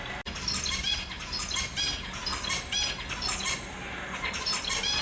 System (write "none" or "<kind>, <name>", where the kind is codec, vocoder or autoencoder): none